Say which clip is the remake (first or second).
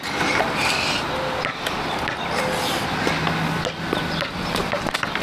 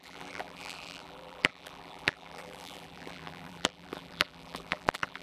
second